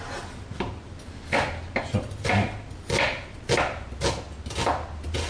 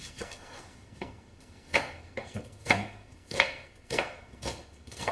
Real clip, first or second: first